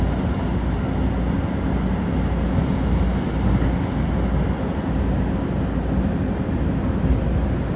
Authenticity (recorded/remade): recorded